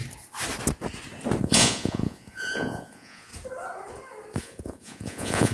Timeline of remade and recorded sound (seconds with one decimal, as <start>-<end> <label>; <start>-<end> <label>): 0.0-1.4 recorded; 1.4-3.3 remade; 3.3-4.4 recorded; 4.4-5.5 remade